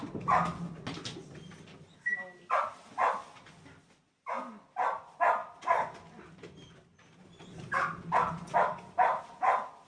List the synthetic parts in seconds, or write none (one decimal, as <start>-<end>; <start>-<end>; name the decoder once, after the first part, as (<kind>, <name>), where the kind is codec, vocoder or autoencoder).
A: none